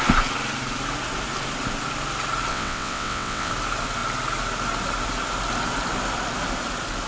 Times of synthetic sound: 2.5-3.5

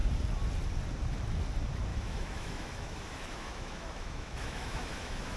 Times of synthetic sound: 1.9-5.4

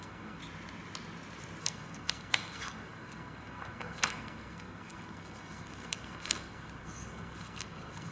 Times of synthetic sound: 0.0-0.4; 1.6-8.1

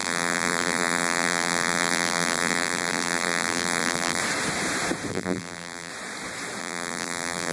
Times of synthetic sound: 0.0-4.2; 5.1-5.9; 6.6-7.5

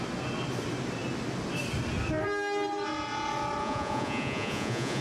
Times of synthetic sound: 3.6-5.0

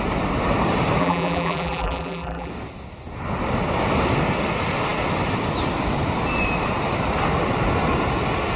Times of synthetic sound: 1.0-2.5

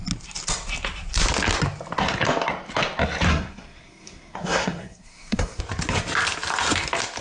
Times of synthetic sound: 3.3-5.6